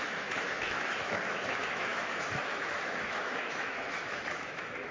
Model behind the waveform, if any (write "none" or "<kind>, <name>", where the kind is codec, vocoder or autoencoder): autoencoder, DAC-VAE